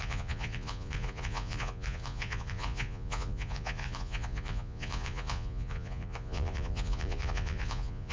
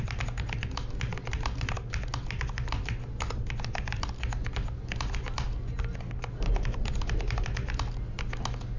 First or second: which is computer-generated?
first